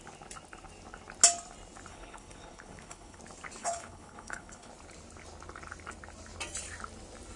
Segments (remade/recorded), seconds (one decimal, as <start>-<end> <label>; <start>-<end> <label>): 0.0-1.9 recorded; 1.9-3.2 remade; 3.2-3.6 recorded; 3.6-4.7 remade; 4.7-7.4 recorded